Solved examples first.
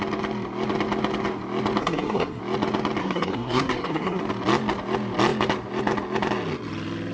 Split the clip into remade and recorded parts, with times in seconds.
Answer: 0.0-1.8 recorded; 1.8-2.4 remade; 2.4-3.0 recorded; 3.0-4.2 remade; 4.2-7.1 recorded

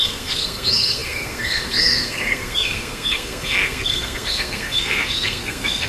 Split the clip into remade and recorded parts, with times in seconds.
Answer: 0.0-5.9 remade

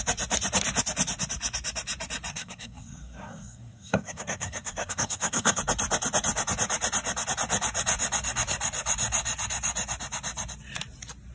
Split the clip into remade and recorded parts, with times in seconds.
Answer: 0.0-2.3 recorded; 2.3-5.6 remade; 5.6-11.3 recorded